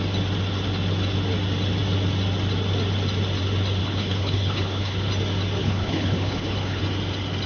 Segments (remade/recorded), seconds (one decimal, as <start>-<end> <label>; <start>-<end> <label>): 0.0-3.8 recorded; 3.8-5.1 remade; 5.1-5.6 recorded; 5.6-6.8 remade; 6.8-7.5 recorded